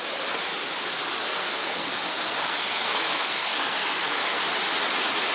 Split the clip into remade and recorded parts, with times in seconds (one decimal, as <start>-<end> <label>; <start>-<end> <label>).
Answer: 0.0-1.3 recorded; 1.3-4.4 remade; 4.4-5.3 recorded